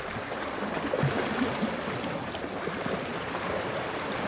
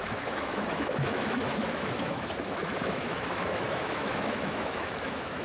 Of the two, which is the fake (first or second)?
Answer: second